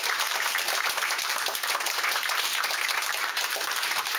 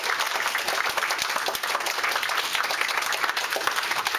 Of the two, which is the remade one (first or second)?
first